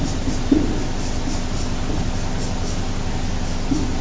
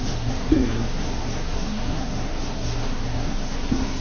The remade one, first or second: second